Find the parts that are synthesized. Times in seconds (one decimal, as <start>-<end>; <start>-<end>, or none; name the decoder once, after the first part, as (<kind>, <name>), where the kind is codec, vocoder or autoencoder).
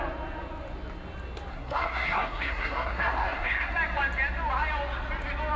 1.5-3.7 (codec, SNAC)